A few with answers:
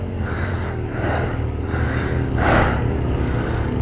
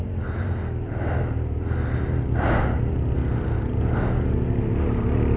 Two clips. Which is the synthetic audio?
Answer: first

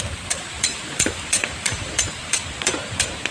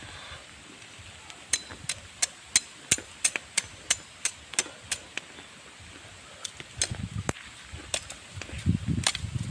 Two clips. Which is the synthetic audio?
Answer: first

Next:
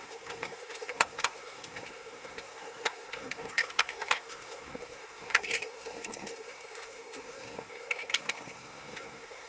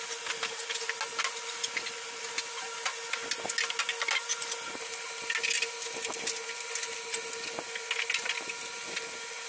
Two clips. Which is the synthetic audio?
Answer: first